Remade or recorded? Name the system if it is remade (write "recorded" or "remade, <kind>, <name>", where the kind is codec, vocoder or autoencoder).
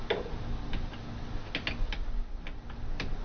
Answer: recorded